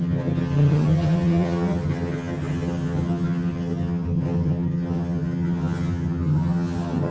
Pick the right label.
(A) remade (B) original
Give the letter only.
A